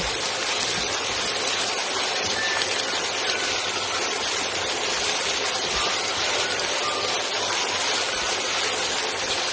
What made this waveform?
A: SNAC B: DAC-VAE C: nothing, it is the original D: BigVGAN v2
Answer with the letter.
D